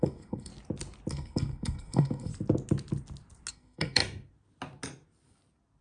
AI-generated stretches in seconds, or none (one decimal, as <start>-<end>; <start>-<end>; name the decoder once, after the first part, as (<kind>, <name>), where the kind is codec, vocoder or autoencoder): 0.0-0.5 (codec, SNAC); 1.1-2.3; 3.5-4.0